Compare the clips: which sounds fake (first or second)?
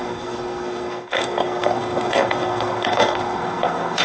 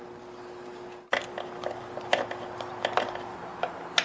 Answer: first